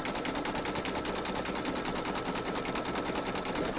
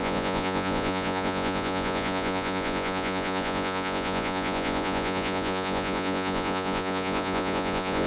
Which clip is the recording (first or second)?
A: first